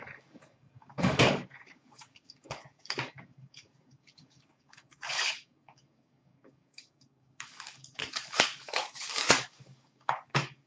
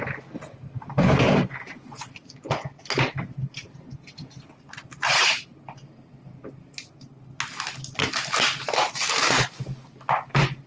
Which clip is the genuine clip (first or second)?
second